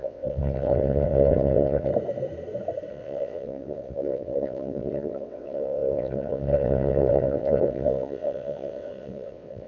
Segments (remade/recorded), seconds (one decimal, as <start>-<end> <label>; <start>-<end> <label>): 0.0-1.9 remade; 1.9-2.9 recorded; 2.9-9.7 remade